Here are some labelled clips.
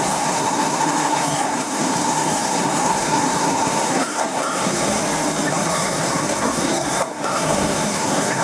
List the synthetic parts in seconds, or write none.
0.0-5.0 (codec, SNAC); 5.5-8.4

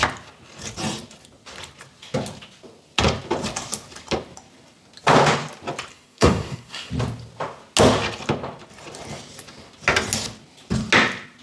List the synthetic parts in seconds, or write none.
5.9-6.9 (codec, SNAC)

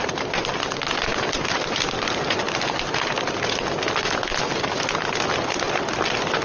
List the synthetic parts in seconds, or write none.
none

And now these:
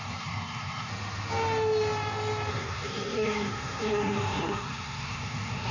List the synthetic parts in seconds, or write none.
0.0-0.9 (codec, SNAC); 2.5-5.7

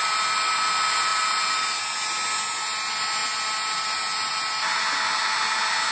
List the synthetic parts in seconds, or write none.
none

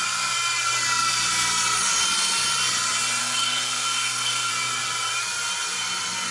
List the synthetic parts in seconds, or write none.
3.2-4.5 (codec, SNAC)

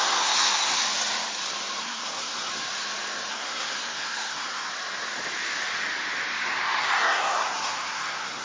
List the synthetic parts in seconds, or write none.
0.0-0.8 (codec, SNAC); 1.8-2.5; 3.3-4.7; 6.8-8.4